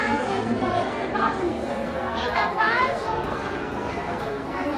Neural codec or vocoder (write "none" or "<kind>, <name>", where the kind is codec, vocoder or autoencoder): codec, SNAC